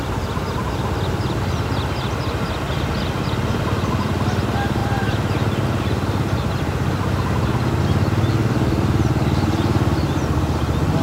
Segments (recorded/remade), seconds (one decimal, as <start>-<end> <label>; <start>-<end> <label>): 0.0-11.0 recorded